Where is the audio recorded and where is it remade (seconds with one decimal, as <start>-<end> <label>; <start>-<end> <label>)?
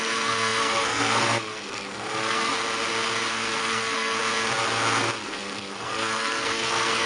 0.0-2.5 remade; 2.5-3.3 recorded; 3.3-4.2 remade; 4.2-5.2 recorded; 5.2-7.1 remade